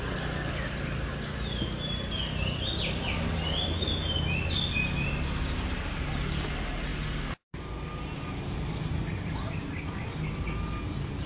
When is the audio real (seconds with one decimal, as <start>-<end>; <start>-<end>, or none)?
0.0-11.3